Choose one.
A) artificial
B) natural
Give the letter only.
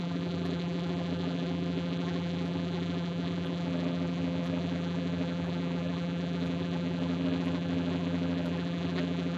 A